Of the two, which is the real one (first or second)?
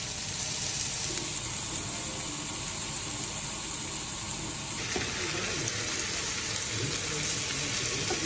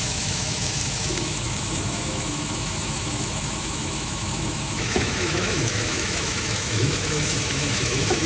first